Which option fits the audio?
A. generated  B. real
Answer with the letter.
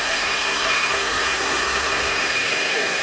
A